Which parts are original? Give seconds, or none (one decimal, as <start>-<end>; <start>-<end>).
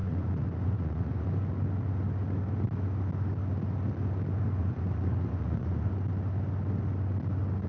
1.3-4.6; 5.9-7.7